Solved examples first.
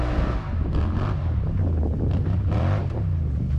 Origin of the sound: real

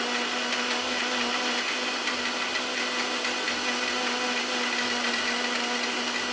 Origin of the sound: real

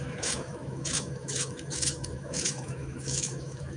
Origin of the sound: fake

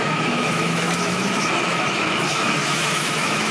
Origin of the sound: fake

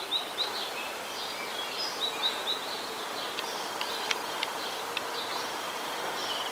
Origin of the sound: real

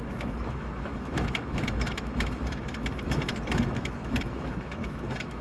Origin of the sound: fake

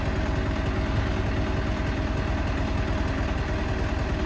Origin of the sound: real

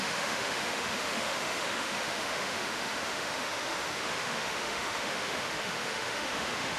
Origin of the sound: fake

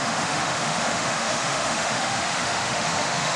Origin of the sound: fake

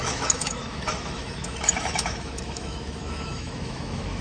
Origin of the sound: fake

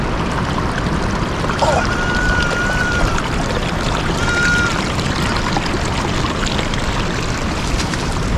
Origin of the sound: real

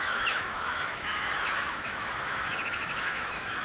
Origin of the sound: fake